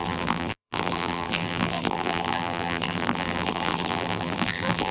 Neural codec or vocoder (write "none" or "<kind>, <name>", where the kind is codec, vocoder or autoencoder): vocoder, BigVGAN v2